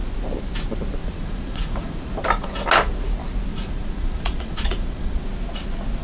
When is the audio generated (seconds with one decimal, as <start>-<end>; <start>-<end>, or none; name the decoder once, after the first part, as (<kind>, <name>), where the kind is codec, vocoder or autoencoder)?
1.0-2.1 (vocoder, Vocos); 3.5-5.2